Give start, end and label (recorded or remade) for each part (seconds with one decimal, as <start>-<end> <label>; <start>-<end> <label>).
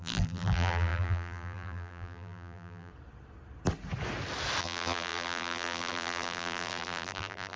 0.0-2.9 remade; 2.9-4.6 recorded; 4.6-7.6 remade